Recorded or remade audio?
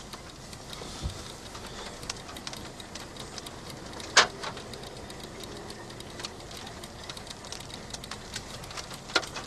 recorded